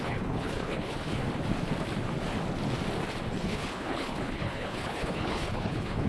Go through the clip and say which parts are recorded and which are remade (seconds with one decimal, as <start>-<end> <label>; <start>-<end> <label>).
0.0-1.2 remade; 1.2-3.5 recorded; 3.5-6.1 remade